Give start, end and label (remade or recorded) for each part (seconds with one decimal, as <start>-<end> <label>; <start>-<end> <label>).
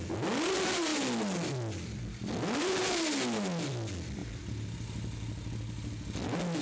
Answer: 0.0-6.6 recorded